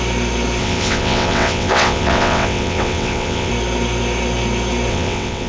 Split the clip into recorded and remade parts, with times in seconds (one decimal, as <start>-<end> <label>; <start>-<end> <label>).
0.0-0.6 recorded; 0.6-3.5 remade; 3.5-4.9 recorded; 4.9-5.5 remade